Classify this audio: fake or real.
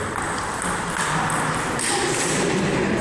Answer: real